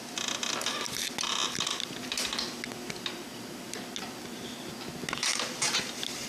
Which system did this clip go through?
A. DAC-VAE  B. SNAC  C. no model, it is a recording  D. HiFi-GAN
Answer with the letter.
C